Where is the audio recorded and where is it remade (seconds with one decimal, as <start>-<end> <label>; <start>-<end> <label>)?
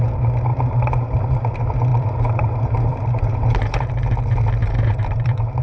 0.0-0.5 recorded; 0.5-1.5 remade; 1.5-1.9 recorded; 1.9-3.9 remade; 3.9-4.6 recorded; 4.6-5.6 remade